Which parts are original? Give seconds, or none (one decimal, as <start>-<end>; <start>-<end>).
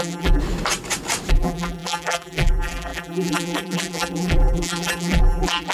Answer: 0.4-1.3